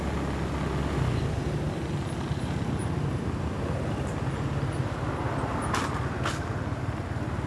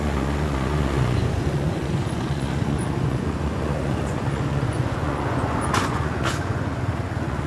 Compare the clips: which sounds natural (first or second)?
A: first